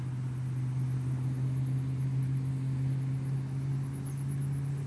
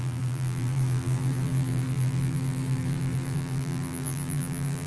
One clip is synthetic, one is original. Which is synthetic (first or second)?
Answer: second